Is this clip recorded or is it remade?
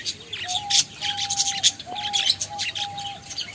recorded